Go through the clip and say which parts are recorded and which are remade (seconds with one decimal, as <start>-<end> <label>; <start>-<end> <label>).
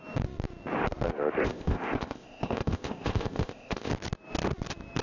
0.0-1.4 recorded; 1.4-3.9 remade; 3.9-5.0 recorded